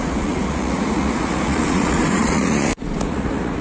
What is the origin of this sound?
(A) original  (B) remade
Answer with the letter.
B